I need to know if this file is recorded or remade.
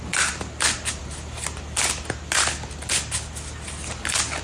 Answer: recorded